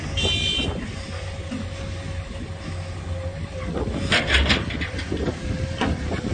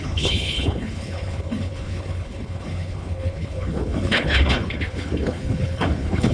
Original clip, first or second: first